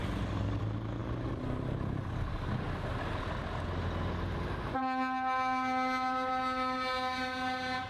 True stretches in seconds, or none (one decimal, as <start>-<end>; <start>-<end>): 0.0-7.9